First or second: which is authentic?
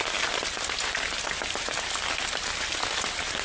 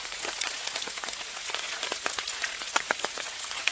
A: first